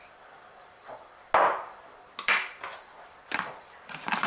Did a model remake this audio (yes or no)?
no